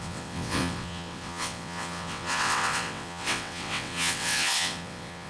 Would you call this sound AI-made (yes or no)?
yes